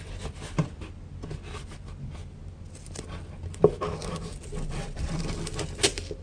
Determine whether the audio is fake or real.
real